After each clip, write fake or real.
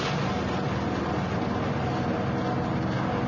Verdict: real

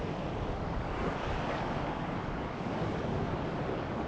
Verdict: fake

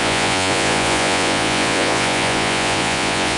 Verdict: fake